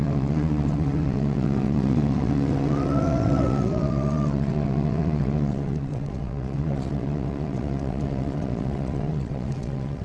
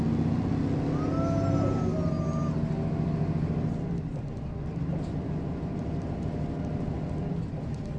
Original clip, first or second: second